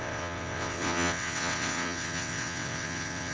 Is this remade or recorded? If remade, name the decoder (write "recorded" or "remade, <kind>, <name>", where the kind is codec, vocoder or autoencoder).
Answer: remade, vocoder, WaveNeXt